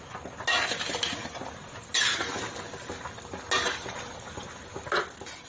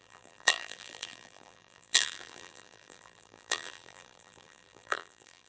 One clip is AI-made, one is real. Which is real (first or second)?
first